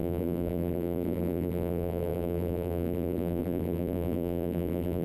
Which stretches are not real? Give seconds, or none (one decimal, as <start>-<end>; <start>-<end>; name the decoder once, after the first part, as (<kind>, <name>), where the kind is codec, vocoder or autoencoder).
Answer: 0.0-5.0 (vocoder, BigVGAN v2)

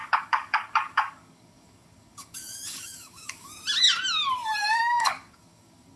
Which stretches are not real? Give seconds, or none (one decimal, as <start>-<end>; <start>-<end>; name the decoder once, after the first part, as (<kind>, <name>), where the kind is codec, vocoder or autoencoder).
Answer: 0.0-3.6 (codec, DAC); 4.6-6.0

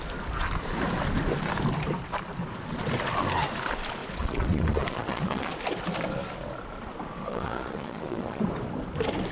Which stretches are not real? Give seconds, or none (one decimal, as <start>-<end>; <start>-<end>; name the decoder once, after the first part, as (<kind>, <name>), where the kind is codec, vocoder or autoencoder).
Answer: 4.0-5.5 (vocoder, Vocos); 7.3-8.4

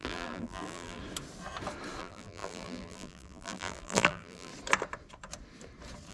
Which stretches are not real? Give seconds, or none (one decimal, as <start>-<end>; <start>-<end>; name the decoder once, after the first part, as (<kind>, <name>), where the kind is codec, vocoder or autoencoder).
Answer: 0.0-1.0 (vocoder, BigVGAN v2); 2.0-4.5

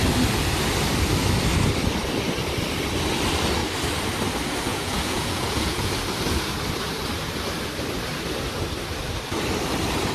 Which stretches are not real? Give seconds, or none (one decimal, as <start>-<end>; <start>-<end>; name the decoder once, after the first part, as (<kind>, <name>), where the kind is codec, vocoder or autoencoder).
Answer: 4.7-5.9 (vocoder, Vocos)

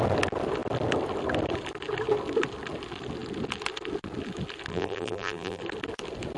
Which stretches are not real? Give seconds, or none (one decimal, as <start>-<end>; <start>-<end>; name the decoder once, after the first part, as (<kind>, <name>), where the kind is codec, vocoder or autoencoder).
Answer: 4.7-5.6 (vocoder, BigVGAN v2)

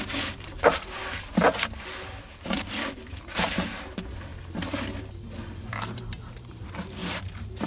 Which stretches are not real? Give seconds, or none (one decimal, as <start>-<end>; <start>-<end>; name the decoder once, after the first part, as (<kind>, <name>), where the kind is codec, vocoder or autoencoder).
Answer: 0.0-1.0 (vocoder, BigVGAN v2); 1.8-4.3; 5.0-7.7